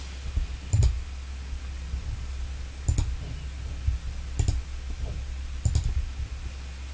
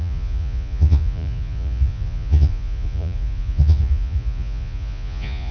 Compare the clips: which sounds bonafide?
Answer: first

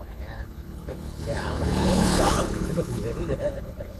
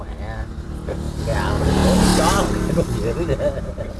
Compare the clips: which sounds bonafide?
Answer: second